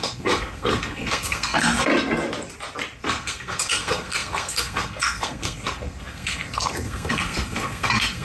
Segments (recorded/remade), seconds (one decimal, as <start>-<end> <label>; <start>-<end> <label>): 0.0-1.9 remade; 1.9-3.0 recorded; 3.0-8.2 remade